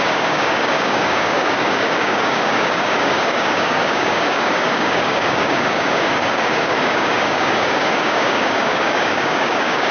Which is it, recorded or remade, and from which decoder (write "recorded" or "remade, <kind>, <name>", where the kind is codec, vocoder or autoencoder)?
remade, codec, DAC